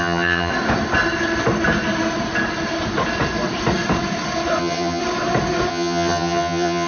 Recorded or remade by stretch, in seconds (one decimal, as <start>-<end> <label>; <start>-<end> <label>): 0.0-0.5 remade; 0.5-4.6 recorded; 4.6-5.0 remade; 5.0-5.7 recorded; 5.7-6.9 remade